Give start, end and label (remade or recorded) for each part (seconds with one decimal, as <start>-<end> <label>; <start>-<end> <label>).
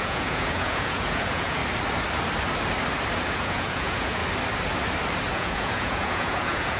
0.0-1.6 remade; 1.6-3.3 recorded; 3.3-4.2 remade; 4.2-5.3 recorded; 5.3-6.8 remade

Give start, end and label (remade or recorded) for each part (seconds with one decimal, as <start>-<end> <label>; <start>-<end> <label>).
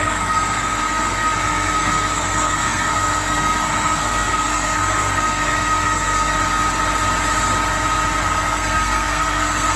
0.0-6.4 remade; 6.4-8.2 recorded; 8.2-9.8 remade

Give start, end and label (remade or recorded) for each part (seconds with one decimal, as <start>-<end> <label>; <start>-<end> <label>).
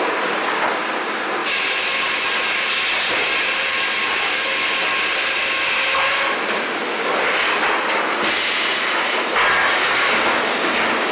0.0-9.6 recorded; 9.6-11.1 remade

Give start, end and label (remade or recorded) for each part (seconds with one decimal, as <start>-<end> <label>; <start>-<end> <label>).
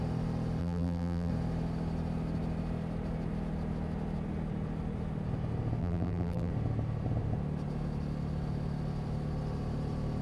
0.0-0.6 recorded; 0.6-1.3 remade; 1.3-5.8 recorded; 5.8-6.5 remade; 6.5-10.2 recorded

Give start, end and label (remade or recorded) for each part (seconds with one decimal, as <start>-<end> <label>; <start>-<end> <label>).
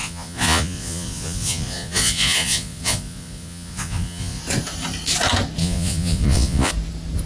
0.0-4.4 remade; 4.4-5.6 recorded; 5.6-6.7 remade; 6.7-7.3 recorded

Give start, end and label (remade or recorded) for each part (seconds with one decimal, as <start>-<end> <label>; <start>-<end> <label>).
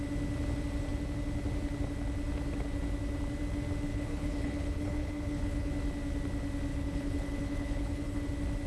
0.0-3.9 recorded; 3.9-5.7 remade; 5.7-6.7 recorded; 6.7-8.2 remade; 8.2-8.7 recorded